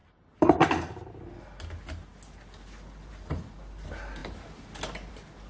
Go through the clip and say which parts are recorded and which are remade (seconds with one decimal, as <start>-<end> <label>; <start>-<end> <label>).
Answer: 0.0-0.6 remade; 0.6-5.5 recorded